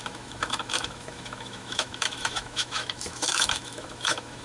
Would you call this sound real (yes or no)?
no